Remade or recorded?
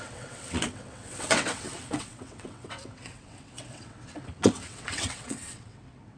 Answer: remade